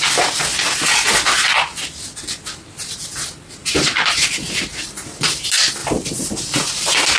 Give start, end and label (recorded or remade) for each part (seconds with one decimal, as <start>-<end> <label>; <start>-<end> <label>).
0.0-3.6 recorded; 3.6-4.9 remade; 4.9-5.8 recorded; 5.8-6.4 remade; 6.4-7.2 recorded